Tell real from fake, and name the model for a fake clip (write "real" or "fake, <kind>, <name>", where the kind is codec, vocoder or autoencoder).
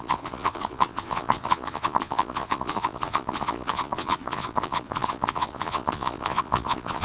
fake, vocoder, Vocos